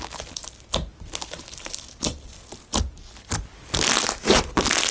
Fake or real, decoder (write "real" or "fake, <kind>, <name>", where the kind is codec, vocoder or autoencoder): real